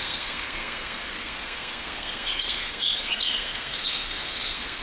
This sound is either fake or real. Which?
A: fake